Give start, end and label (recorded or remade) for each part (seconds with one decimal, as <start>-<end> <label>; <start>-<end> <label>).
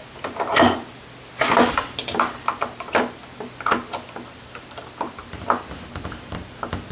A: 0.0-5.2 recorded; 5.2-6.9 remade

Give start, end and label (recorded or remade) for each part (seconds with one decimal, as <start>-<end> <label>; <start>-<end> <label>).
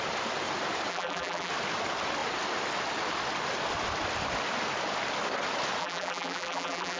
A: 0.0-0.9 recorded; 0.9-1.5 remade; 1.5-5.8 recorded; 5.8-7.0 remade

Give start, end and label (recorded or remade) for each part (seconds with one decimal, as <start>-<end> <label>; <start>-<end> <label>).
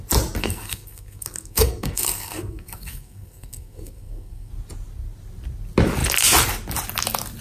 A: 0.0-0.4 recorded; 0.4-4.5 remade; 4.5-7.4 recorded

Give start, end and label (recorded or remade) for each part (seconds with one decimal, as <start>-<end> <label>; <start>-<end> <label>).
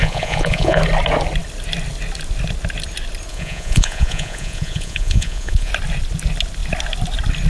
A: 0.0-0.8 remade; 0.8-3.3 recorded; 3.3-5.7 remade; 5.7-7.5 recorded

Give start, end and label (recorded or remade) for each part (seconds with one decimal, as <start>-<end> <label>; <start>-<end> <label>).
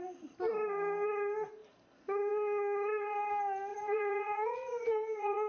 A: 0.0-3.7 recorded; 3.7-5.5 remade